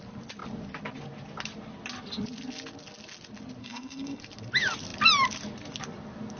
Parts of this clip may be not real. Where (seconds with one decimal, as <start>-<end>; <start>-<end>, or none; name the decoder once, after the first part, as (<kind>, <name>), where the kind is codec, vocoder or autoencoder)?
3.6-4.2 (codec, SNAC)